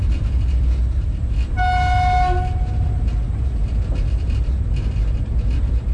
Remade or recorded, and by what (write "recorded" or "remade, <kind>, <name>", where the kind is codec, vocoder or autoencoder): recorded